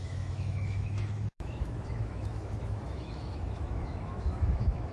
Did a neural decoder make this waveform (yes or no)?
yes